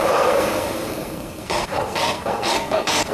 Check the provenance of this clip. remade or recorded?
remade